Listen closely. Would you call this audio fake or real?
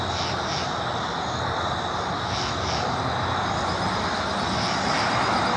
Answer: real